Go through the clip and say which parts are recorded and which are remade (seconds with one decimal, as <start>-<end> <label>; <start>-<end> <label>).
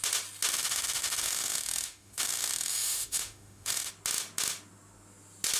0.0-0.5 recorded; 0.5-3.9 remade; 3.9-5.6 recorded